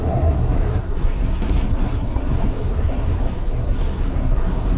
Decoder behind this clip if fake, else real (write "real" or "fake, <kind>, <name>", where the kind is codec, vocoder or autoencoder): fake, codec, SNAC